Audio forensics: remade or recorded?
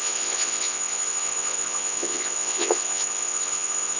remade